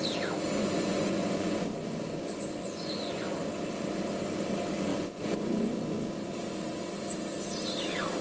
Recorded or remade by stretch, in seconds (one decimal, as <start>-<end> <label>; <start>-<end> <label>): 0.0-0.6 recorded; 0.6-3.5 remade; 3.5-4.9 recorded; 4.9-6.3 remade; 6.3-8.2 recorded